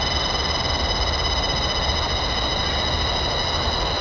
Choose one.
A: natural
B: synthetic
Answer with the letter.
A